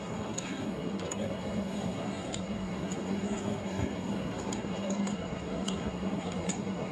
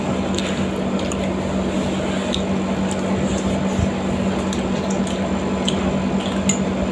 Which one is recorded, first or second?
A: second